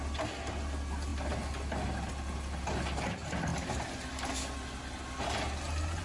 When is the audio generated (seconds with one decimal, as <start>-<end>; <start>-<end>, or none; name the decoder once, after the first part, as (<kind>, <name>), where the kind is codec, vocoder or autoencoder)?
none